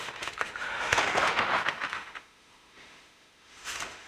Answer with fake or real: fake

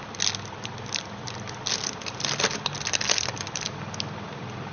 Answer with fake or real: real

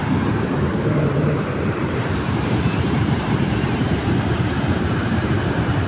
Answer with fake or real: fake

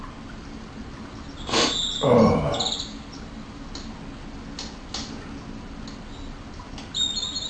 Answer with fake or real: real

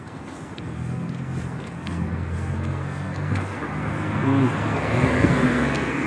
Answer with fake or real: fake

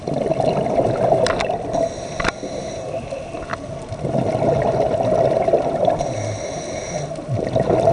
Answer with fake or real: real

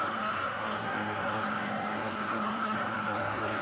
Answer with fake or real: fake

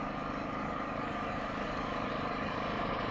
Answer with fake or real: fake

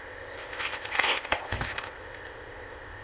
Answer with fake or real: fake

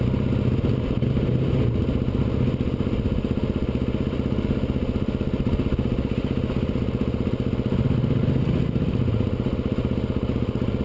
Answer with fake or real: real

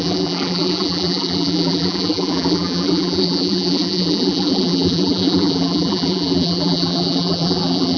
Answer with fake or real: fake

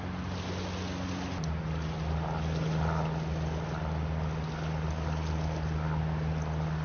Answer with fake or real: real